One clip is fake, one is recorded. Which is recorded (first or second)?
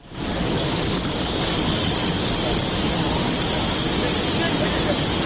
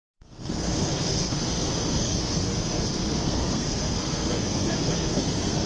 first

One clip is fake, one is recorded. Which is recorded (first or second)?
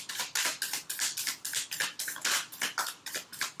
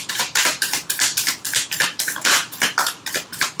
first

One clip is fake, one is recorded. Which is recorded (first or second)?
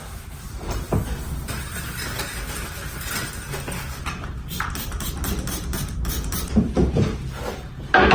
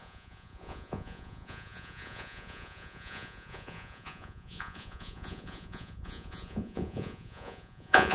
first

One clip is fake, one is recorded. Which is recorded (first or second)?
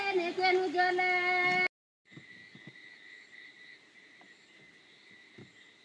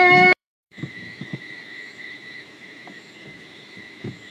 first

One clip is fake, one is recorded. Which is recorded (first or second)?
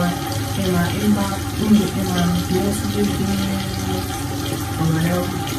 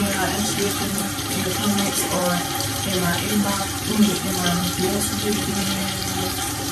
first